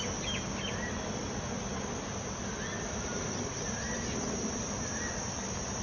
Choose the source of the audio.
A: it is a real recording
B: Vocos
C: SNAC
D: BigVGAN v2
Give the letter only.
A